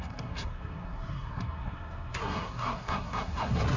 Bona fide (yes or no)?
no